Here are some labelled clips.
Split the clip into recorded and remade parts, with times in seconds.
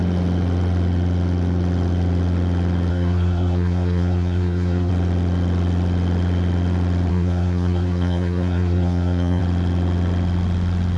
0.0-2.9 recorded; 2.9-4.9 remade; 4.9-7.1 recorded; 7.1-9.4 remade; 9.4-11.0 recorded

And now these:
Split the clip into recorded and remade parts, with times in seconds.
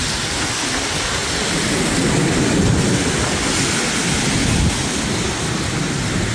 0.0-6.3 recorded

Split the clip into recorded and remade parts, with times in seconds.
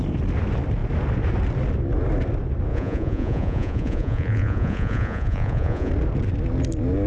0.0-2.7 recorded; 2.7-5.9 remade; 5.9-7.1 recorded